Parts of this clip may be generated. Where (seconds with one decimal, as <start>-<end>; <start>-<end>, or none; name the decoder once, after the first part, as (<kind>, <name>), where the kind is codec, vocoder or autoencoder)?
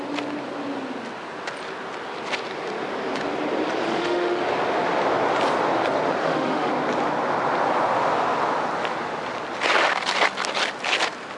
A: 3.9-4.4 (autoencoder, DAC-VAE); 6.2-6.7